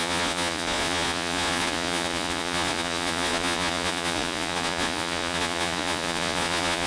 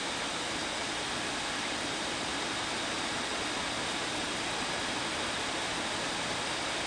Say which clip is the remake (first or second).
first